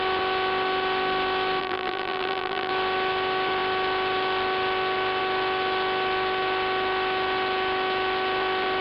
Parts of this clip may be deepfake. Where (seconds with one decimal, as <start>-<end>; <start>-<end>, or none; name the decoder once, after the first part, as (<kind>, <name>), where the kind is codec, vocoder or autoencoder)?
1.6-2.7 (vocoder, BigVGAN v2)